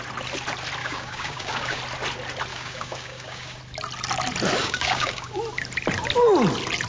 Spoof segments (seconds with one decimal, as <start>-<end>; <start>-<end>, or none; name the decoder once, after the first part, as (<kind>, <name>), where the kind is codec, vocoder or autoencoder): 0.8-1.8 (codec, DAC); 2.5-3.6; 4.6-5.3